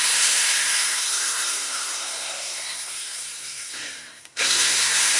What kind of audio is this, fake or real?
fake